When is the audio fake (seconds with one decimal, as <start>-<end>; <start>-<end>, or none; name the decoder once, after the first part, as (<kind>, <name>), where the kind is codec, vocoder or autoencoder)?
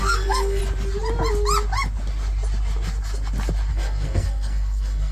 0.0-0.6 (codec, SNAC); 3.7-5.1